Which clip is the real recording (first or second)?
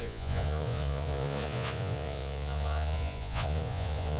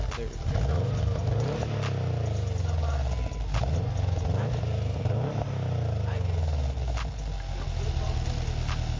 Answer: second